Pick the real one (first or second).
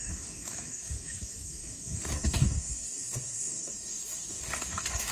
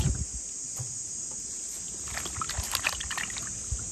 second